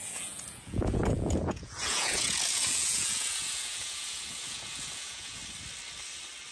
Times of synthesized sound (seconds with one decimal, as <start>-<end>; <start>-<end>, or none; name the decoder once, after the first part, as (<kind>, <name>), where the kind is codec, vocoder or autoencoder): 0.0-5.4 (vocoder, Vocos)